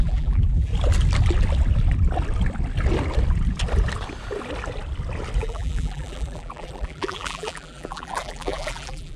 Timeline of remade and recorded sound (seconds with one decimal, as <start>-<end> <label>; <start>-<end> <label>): 0.0-0.7 remade; 0.7-5.4 recorded; 5.4-9.2 remade